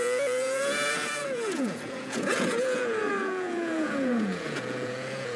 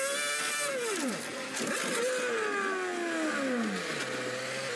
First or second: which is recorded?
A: second